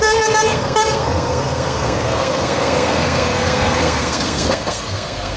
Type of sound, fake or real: fake